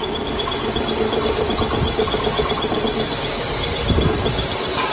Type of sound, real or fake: real